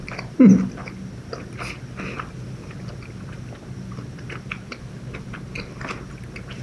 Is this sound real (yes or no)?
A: yes